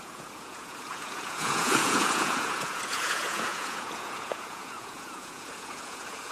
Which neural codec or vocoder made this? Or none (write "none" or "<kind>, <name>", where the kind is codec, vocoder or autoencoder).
vocoder, Vocos